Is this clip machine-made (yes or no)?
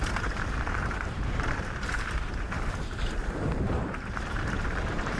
yes